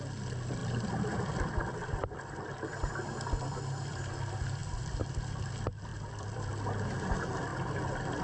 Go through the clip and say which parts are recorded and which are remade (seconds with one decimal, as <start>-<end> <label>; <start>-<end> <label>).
0.0-0.6 recorded; 0.6-4.0 remade; 4.0-4.6 recorded; 4.6-5.5 remade; 5.5-5.9 recorded; 5.9-6.5 remade; 6.5-8.2 recorded